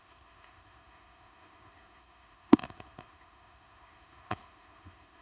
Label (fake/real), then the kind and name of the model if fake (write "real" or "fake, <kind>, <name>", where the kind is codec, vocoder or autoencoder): fake, autoencoder, DAC-VAE